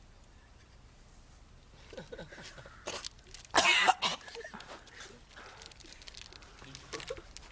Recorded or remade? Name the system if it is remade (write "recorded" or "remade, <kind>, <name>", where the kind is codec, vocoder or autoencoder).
recorded